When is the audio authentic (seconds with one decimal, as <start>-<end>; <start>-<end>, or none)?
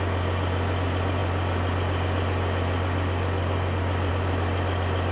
0.0-5.1